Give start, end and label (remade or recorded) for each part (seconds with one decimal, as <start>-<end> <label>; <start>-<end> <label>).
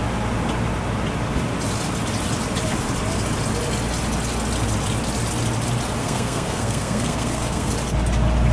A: 0.0-6.0 recorded; 6.0-7.7 remade; 7.7-8.5 recorded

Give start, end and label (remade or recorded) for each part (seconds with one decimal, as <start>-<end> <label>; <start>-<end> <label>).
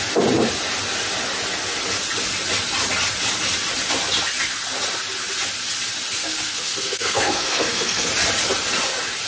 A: 0.0-6.2 recorded; 6.2-8.1 remade; 8.1-9.3 recorded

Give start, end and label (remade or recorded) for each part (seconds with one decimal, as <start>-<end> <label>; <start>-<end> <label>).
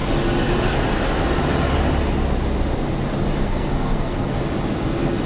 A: 0.0-3.4 recorded; 3.4-4.4 remade; 4.4-5.3 recorded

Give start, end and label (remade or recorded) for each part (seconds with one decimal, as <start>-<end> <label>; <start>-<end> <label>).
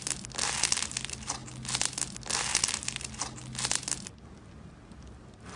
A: 0.0-5.6 recorded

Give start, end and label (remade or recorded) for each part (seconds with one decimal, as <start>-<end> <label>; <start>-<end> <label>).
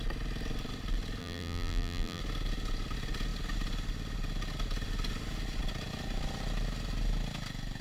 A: 0.0-1.2 recorded; 1.2-2.2 remade; 2.2-7.8 recorded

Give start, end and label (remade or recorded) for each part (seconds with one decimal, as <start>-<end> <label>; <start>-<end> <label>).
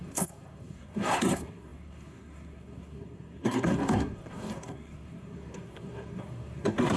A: 0.0-7.0 remade